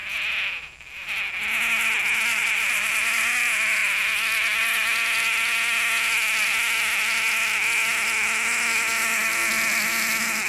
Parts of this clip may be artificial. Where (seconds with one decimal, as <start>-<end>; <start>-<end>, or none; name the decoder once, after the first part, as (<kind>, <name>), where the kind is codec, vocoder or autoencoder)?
2.3-3.2 (vocoder, BigVGAN v2)